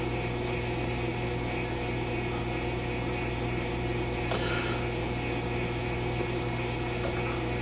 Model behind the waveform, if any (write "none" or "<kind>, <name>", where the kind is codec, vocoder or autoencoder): none